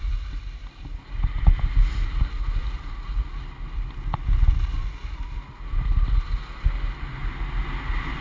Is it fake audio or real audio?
real